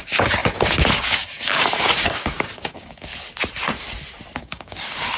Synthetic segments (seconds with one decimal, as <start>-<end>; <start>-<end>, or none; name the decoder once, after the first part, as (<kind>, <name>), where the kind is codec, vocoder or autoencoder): 0.0-3.1 (codec, DAC); 4.4-5.2

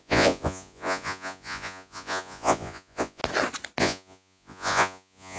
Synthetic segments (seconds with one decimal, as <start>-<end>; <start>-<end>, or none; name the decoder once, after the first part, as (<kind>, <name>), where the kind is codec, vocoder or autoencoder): 0.0-3.2 (vocoder, Vocos); 3.8-5.4

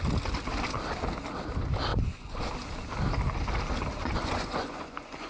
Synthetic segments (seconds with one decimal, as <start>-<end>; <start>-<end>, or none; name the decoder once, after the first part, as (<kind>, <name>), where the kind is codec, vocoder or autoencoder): 1.9-2.5 (vocoder, Vocos); 4.0-5.3

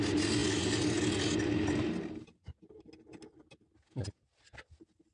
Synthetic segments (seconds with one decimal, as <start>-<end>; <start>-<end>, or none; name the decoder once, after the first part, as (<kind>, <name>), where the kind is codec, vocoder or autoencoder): none

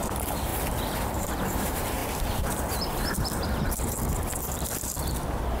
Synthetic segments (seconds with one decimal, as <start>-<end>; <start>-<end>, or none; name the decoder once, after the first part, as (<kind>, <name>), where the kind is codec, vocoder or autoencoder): 0.0-0.5 (vocoder, BigVGAN v2); 1.1-2.0

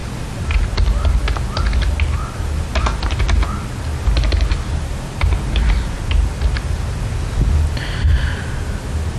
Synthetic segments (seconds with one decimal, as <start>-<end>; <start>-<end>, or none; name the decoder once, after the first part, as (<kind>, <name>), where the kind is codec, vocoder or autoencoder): 0.0-0.6 (vocoder, BigVGAN v2); 4.5-6.4; 8.1-8.7

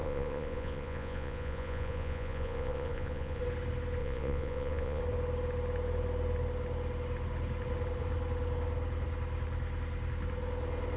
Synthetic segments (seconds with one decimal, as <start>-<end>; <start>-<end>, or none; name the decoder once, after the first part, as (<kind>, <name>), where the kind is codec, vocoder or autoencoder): 0.0-3.4 (vocoder, Vocos); 4.0-5.0